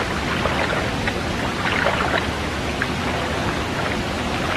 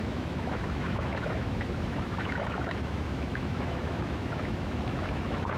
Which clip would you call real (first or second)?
first